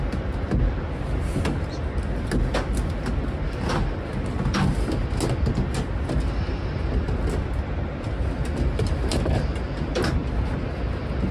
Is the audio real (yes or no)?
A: yes